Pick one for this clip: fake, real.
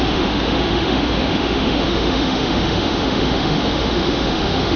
fake